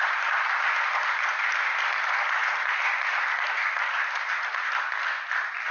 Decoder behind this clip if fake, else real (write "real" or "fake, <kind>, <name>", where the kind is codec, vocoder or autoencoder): real